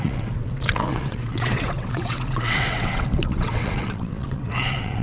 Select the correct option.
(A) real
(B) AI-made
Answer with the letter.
B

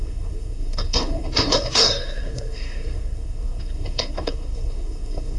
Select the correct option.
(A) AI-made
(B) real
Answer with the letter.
A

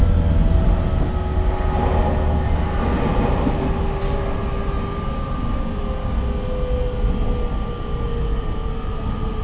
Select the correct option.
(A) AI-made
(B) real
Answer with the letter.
B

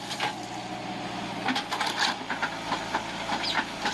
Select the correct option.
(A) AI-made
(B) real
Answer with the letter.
B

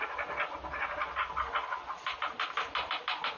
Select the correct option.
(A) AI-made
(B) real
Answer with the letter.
B